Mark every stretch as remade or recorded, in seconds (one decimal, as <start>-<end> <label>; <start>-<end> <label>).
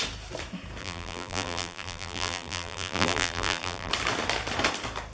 0.0-0.8 recorded; 0.8-3.9 remade; 3.9-5.1 recorded